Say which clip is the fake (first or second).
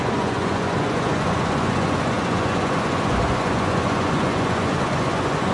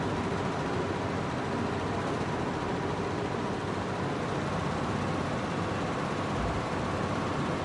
first